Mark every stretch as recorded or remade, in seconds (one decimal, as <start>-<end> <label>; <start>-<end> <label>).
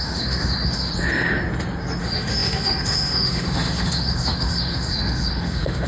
0.0-0.9 remade; 0.9-2.0 recorded; 2.0-5.9 remade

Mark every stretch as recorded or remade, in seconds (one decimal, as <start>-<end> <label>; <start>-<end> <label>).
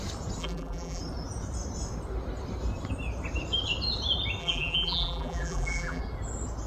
0.0-0.4 recorded; 0.4-1.0 remade; 1.0-4.4 recorded; 4.4-6.0 remade; 6.0-6.7 recorded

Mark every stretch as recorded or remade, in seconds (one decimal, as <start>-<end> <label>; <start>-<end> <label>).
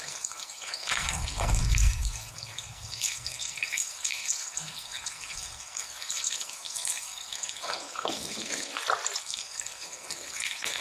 0.0-8.7 remade; 8.7-9.2 recorded; 9.2-10.8 remade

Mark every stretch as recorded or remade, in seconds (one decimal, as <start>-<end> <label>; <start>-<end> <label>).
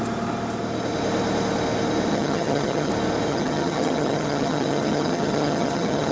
0.0-2.1 recorded; 2.1-2.9 remade; 2.9-3.3 recorded; 3.3-6.1 remade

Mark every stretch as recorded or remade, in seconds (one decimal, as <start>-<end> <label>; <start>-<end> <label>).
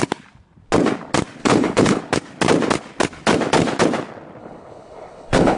0.0-1.4 recorded; 1.4-2.0 remade; 2.0-4.4 recorded; 4.4-5.6 remade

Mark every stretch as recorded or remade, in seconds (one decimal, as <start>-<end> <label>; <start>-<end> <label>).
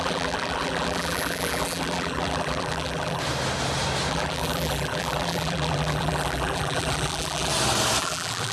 0.0-3.2 remade; 3.2-4.1 recorded; 4.1-7.5 remade; 7.5-8.0 recorded; 8.0-8.5 remade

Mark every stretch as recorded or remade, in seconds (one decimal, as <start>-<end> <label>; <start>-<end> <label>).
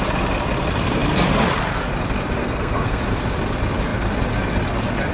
0.0-2.4 recorded; 2.4-3.0 remade; 3.0-5.1 recorded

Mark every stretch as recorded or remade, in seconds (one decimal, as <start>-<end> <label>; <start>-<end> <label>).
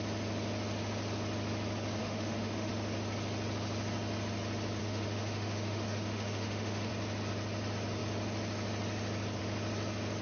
0.0-2.0 recorded; 2.0-2.7 remade; 2.7-4.8 recorded; 4.8-6.9 remade; 6.9-10.2 recorded